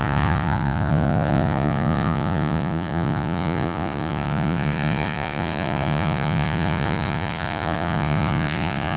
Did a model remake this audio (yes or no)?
yes